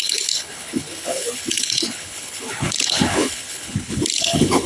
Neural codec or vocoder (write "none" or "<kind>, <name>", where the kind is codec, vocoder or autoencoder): codec, HILCodec